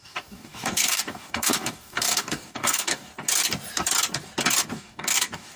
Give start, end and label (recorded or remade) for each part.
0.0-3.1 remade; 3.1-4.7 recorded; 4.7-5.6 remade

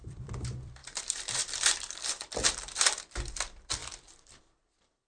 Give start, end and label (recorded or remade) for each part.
0.0-3.8 remade; 3.8-4.4 recorded; 4.4-5.1 remade

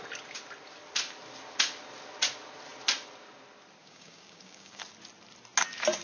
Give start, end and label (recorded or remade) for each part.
0.0-3.8 recorded; 3.8-4.8 remade; 4.8-6.0 recorded

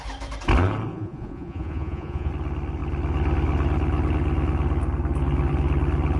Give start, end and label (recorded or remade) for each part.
0.0-0.9 recorded; 0.9-2.3 remade; 2.3-6.2 recorded

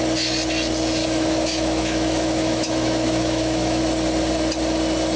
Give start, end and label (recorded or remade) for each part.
0.0-1.0 recorded; 1.0-3.8 remade; 3.8-5.2 recorded

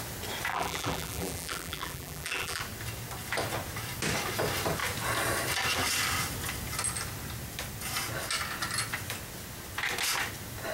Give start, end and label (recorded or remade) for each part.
0.0-0.5 recorded; 0.5-2.6 remade; 2.6-10.7 recorded